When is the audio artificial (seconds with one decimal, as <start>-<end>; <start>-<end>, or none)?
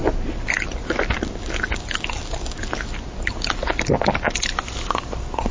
none